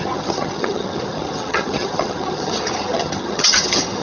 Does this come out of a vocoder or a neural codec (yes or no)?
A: yes